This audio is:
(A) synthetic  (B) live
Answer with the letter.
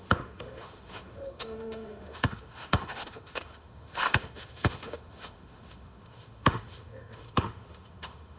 A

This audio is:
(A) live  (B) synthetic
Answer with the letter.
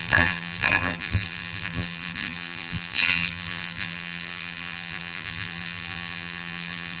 B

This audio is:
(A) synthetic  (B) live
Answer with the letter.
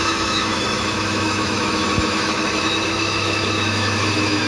A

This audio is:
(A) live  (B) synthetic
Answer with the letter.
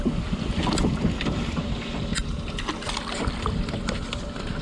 A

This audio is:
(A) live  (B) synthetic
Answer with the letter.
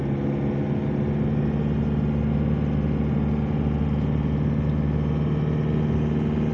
A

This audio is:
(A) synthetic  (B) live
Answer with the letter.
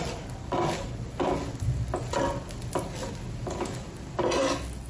B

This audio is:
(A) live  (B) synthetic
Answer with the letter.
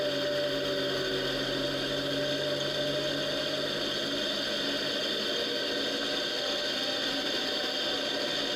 A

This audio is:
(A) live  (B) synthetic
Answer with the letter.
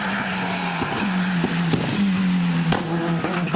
A